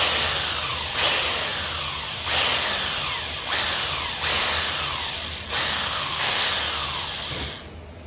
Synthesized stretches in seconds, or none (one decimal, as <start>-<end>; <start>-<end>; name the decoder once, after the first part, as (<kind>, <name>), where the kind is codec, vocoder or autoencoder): 5.7-6.5 (codec, SNAC)